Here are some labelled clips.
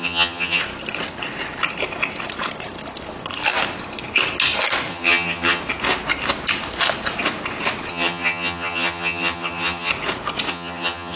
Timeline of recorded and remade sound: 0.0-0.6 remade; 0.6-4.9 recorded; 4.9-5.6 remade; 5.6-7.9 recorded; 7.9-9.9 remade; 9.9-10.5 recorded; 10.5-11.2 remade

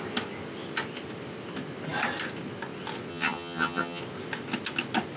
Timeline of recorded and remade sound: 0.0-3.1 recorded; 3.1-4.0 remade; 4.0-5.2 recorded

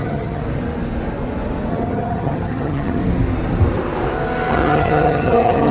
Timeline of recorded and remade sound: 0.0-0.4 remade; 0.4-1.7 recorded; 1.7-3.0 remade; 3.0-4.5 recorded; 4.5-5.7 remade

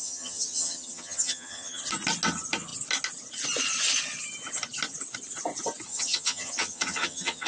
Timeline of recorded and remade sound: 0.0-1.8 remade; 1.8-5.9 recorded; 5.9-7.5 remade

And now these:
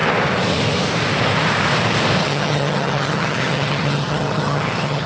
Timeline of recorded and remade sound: 0.0-2.2 recorded; 2.2-5.1 remade